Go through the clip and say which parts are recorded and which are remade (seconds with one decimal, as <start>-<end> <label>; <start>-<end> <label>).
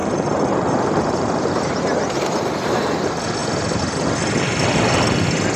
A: 0.0-2.7 remade; 2.7-5.6 recorded